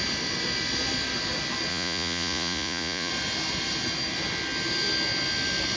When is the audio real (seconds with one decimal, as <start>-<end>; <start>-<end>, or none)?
0.0-1.7; 3.1-5.8